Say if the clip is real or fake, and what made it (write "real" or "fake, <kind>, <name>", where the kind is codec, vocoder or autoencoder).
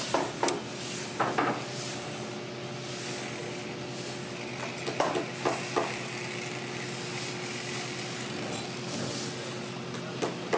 real